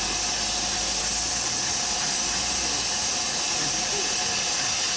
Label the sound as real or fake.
real